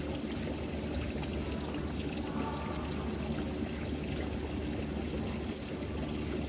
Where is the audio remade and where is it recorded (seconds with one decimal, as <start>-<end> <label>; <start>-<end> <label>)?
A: 0.0-6.5 recorded